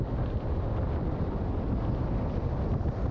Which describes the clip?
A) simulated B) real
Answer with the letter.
B